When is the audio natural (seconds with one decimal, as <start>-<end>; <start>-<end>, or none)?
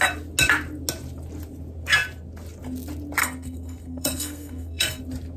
0.0-3.2; 5.0-5.4